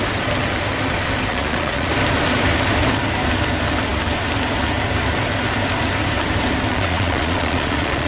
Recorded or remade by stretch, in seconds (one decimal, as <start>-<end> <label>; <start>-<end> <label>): 0.0-1.3 recorded; 1.3-1.9 remade; 1.9-6.7 recorded; 6.7-8.1 remade